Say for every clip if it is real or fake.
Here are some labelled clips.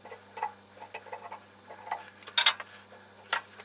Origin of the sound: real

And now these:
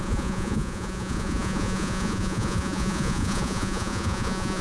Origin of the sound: fake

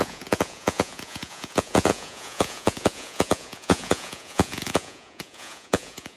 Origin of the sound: fake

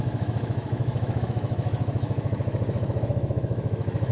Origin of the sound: fake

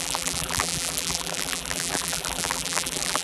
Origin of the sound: fake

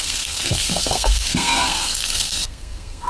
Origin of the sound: fake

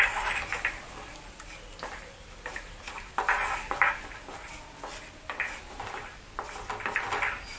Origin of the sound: real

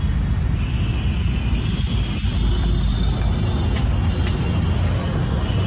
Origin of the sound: real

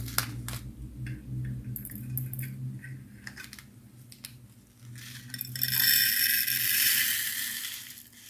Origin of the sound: real